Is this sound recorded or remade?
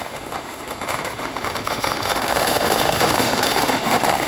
remade